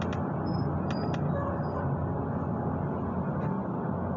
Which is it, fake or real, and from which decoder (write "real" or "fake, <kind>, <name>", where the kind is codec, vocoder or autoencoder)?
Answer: real